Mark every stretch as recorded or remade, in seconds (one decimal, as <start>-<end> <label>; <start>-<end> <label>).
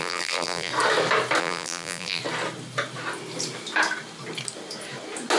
0.0-0.7 remade; 0.7-1.4 recorded; 1.4-2.2 remade; 2.2-5.4 recorded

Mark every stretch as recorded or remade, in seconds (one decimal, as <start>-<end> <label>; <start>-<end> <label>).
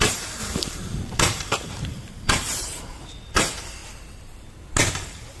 0.0-3.8 remade; 3.8-4.9 recorded; 4.9-5.4 remade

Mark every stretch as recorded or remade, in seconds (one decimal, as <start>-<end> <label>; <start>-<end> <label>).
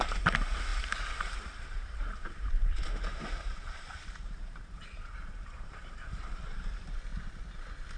0.0-7.1 remade; 7.1-8.0 recorded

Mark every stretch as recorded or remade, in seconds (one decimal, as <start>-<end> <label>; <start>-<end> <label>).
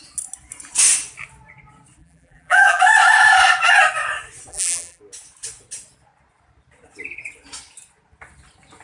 0.0-2.0 recorded; 2.0-2.8 remade; 2.8-4.5 recorded; 4.5-5.0 remade; 5.0-8.8 recorded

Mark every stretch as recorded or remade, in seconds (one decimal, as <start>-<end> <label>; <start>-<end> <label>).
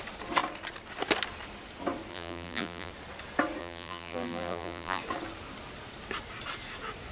0.0-2.1 recorded; 2.1-2.9 remade; 2.9-3.6 recorded; 3.6-5.0 remade; 5.0-7.1 recorded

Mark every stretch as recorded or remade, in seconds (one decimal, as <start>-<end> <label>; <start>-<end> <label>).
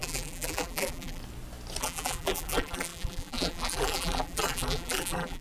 0.0-1.2 remade; 1.2-1.8 recorded; 1.8-5.4 remade